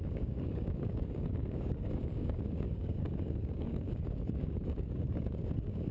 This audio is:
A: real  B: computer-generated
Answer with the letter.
B